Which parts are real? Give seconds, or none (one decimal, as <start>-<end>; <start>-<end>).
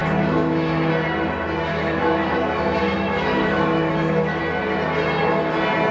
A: 0.9-1.7; 4.4-5.9